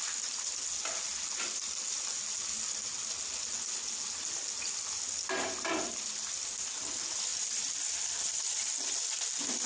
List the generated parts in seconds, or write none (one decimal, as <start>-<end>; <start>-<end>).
none